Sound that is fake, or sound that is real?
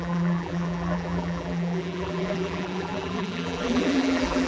fake